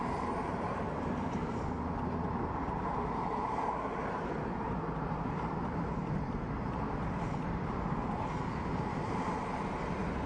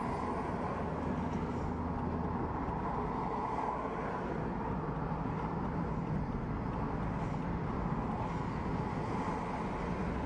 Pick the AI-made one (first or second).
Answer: first